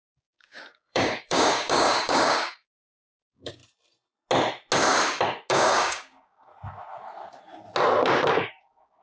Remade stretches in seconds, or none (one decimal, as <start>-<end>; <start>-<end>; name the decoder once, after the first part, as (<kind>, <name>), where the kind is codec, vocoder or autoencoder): 0.0-3.6 (codec, DAC); 5.5-6.5; 8.3-9.0